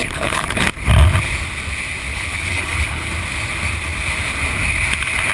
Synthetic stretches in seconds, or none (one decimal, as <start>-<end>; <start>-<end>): 0.0-0.6; 2.1-3.1